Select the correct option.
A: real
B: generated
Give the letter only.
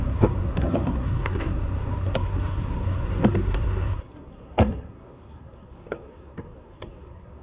B